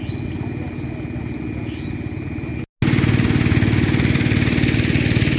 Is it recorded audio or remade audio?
recorded